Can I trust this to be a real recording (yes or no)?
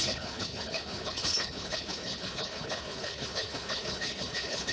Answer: no